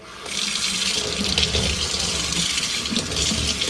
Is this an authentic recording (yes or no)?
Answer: yes